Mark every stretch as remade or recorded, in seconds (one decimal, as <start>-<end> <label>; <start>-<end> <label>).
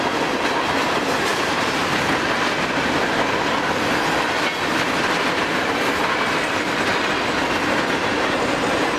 0.0-1.3 recorded; 1.3-2.1 remade; 2.1-9.0 recorded